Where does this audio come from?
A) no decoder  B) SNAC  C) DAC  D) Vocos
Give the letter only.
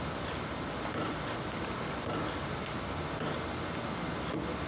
A